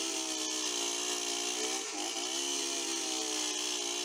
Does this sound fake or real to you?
real